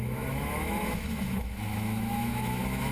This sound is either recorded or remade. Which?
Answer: remade